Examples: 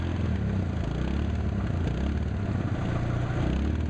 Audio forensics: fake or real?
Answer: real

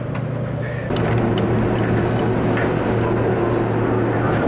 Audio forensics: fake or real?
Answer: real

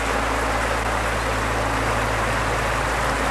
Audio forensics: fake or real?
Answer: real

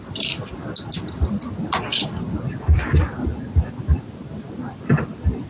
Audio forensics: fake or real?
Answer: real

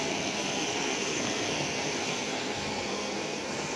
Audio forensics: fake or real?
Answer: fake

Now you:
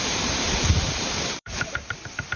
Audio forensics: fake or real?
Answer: fake